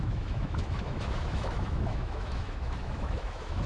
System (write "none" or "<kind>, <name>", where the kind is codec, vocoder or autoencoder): autoencoder, DAC-VAE